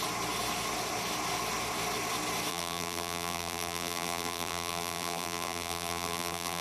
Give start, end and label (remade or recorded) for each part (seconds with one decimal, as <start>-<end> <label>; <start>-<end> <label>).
0.0-2.5 recorded; 2.5-6.6 remade